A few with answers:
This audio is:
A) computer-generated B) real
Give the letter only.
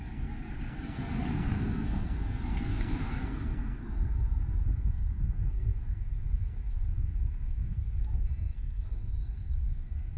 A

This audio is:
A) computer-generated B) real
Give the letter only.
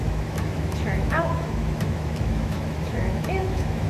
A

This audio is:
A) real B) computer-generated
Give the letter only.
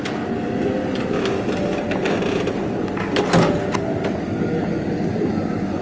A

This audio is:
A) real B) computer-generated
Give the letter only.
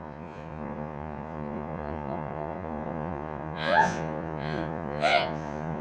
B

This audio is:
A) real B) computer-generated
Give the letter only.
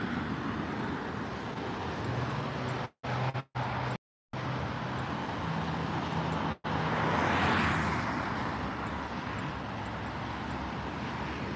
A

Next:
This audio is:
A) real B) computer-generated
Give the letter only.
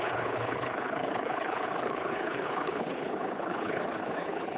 B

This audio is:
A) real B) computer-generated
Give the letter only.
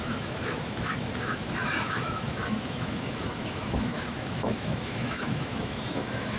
B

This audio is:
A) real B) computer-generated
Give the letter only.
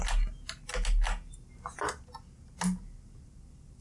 A